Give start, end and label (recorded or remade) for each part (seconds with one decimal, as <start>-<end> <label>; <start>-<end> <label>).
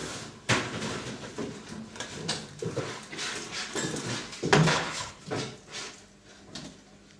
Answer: 0.0-4.7 recorded; 4.7-5.2 remade; 5.2-7.2 recorded